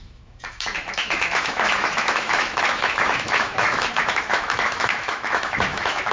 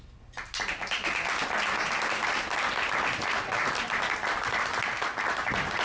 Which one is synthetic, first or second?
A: first